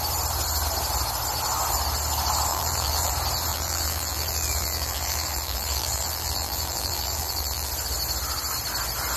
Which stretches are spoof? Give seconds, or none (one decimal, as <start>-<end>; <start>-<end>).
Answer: 2.5-3.1; 3.5-7.7